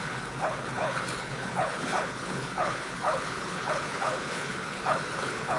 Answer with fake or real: fake